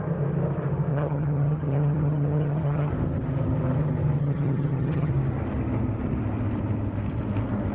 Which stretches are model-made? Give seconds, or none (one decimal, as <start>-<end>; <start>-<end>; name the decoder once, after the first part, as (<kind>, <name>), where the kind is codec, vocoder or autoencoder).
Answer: 0.9-2.9 (vocoder, HiFi-GAN); 4.2-5.1

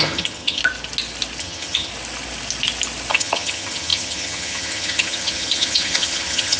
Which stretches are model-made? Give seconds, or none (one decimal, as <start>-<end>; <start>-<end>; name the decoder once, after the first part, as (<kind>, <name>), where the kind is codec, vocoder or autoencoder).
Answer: 0.0-0.6 (vocoder, HiFi-GAN); 1.4-1.9; 3.1-6.6

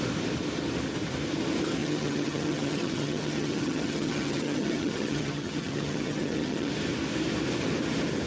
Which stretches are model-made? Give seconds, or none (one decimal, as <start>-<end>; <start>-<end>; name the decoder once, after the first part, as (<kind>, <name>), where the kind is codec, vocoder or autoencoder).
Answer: 1.8-6.7 (vocoder, HiFi-GAN)

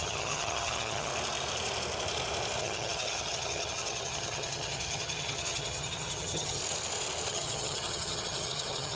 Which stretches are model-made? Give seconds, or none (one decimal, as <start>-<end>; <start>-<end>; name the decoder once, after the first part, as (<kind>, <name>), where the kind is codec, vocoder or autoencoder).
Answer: 0.0-1.1 (vocoder, HiFi-GAN); 2.6-6.6; 7.3-9.0

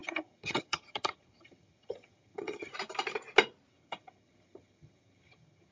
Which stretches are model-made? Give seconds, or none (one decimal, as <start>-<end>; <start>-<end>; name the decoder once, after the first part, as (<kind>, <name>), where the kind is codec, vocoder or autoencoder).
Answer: 0.0-2.7 (vocoder, HiFi-GAN); 3.7-5.7